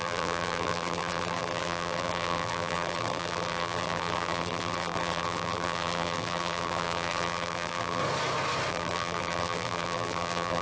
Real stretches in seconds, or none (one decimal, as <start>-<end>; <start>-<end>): 8.0-8.7